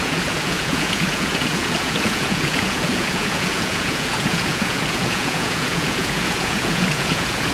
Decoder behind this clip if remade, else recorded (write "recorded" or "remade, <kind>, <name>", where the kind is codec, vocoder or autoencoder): remade, vocoder, Vocos